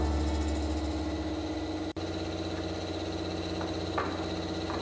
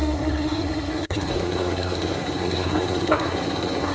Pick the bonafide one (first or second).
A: first